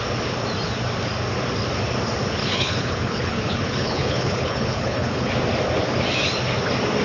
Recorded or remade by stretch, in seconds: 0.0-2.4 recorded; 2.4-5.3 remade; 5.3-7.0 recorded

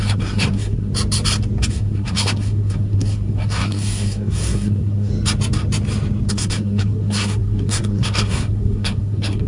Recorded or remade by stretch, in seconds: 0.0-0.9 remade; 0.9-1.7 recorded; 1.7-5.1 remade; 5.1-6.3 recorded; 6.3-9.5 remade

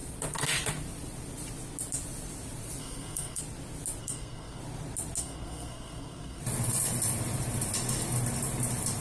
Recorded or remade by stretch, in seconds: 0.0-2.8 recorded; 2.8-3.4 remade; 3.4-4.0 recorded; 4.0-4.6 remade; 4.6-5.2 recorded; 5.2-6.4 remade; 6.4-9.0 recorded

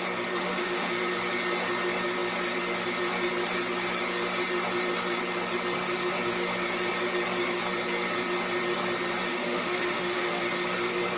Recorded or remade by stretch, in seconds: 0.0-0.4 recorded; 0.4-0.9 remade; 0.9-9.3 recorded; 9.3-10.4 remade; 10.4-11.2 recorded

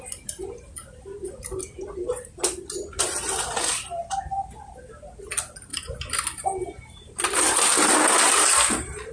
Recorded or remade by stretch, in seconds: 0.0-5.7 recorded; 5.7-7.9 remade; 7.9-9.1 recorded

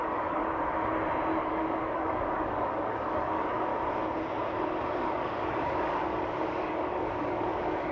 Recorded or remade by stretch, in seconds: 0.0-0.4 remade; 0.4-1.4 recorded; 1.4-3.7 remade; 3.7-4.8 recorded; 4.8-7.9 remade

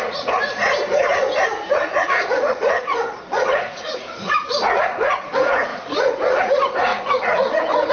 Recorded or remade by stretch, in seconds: 0.0-0.4 remade; 0.4-1.7 recorded; 1.7-7.9 remade